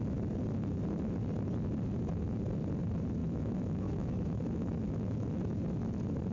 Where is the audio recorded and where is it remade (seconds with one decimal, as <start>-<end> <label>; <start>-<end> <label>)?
0.0-3.2 recorded; 3.2-5.4 remade; 5.4-6.3 recorded